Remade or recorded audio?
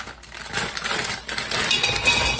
recorded